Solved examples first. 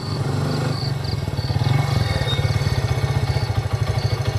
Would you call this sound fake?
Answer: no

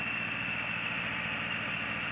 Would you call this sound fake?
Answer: yes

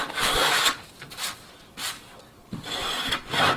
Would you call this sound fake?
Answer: yes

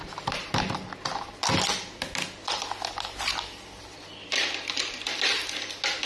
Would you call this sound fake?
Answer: no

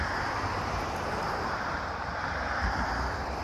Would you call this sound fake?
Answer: yes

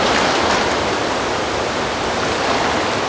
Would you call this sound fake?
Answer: no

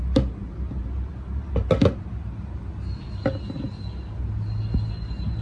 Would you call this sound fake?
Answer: no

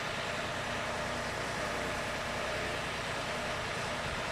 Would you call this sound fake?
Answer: no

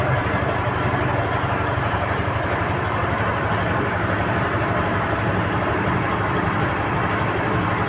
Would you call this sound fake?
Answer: yes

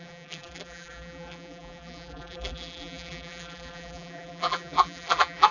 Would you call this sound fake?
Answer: yes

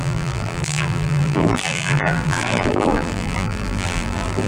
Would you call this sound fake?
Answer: yes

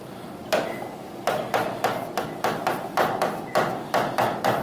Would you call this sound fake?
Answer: no